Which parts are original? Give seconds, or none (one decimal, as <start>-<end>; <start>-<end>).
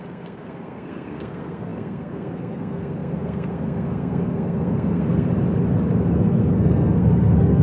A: 5.3-6.1